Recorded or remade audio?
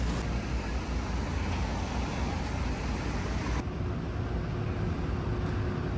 recorded